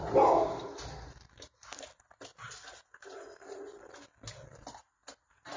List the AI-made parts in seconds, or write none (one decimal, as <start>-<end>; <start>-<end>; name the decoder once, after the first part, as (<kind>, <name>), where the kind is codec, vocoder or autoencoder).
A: none